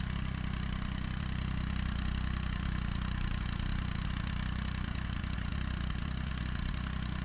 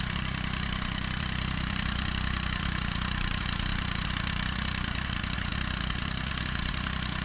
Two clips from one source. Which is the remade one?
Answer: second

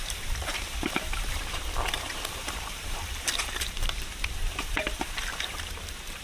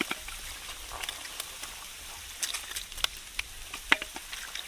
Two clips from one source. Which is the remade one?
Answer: first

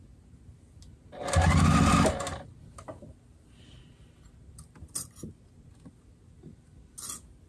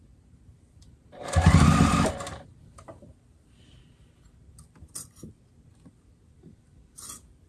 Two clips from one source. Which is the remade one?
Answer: second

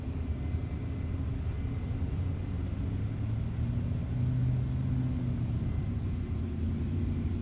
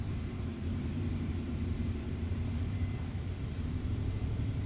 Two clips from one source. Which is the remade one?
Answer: second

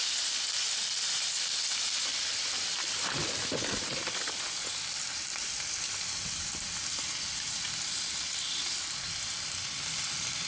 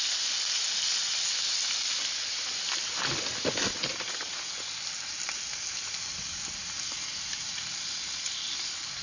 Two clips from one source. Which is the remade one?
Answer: first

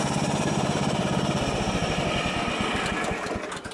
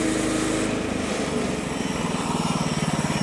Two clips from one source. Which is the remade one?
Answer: first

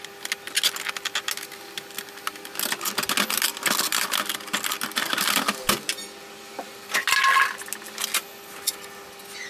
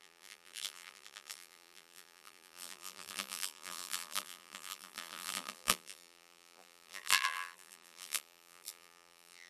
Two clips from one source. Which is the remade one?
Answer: second